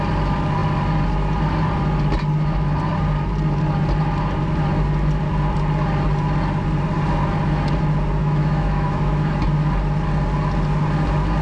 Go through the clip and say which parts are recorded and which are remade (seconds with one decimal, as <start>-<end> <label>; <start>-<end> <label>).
0.0-8.2 recorded; 8.2-9.3 remade; 9.3-11.4 recorded